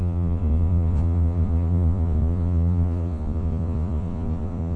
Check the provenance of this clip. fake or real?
fake